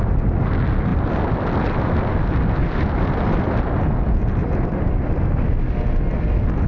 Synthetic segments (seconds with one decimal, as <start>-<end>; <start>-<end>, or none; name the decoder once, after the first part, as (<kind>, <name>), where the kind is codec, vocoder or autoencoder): none